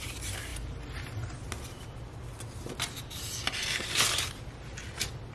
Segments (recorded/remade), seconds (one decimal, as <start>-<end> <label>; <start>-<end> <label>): 0.0-5.3 recorded